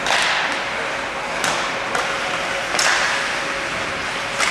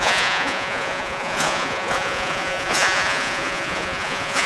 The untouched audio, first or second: first